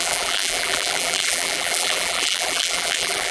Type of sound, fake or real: fake